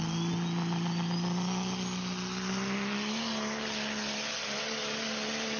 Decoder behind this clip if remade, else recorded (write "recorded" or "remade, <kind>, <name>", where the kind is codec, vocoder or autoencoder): recorded